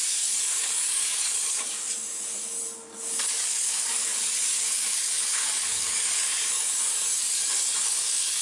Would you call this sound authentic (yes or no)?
no